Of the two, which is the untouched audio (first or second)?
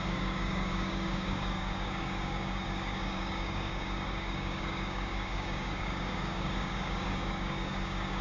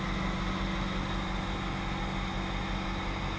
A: second